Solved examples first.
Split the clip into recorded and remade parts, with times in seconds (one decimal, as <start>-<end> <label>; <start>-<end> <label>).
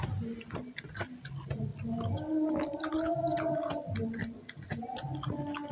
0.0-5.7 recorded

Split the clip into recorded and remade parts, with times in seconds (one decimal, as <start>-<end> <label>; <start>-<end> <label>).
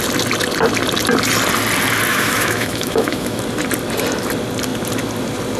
0.0-2.1 recorded; 2.1-3.4 remade; 3.4-5.6 recorded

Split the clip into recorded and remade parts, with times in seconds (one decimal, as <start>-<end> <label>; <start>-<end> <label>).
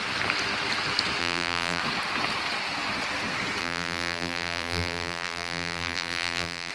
0.0-1.2 recorded; 1.2-1.8 remade; 1.8-3.6 recorded; 3.6-6.7 remade